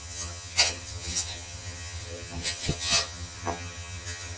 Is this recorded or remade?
remade